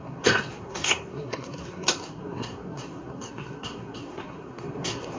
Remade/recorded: remade